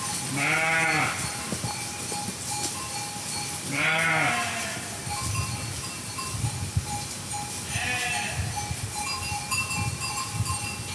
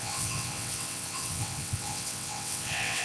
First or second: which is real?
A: first